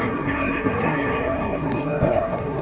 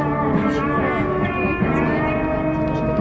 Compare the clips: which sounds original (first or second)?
second